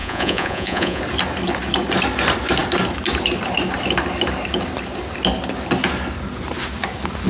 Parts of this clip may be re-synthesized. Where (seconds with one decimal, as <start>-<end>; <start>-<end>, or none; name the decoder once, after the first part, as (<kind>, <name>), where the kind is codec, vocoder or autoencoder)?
0.0-1.0 (vocoder, Vocos)

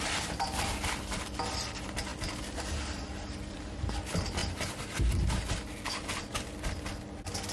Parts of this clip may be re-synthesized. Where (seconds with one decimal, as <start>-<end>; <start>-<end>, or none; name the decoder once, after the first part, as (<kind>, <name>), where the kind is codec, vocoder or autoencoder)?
0.0-4.4 (vocoder, BigVGAN v2); 6.4-7.5